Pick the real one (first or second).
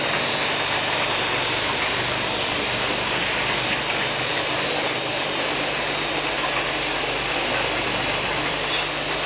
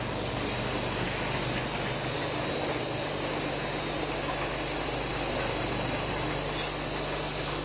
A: second